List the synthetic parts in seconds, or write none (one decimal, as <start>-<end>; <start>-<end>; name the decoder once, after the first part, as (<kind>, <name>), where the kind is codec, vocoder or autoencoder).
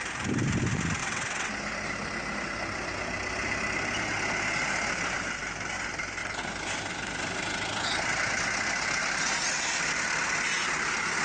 1.0-1.5 (vocoder, WaveNeXt)